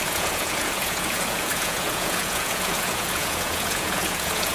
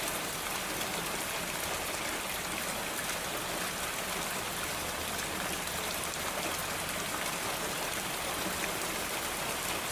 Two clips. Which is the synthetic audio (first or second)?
first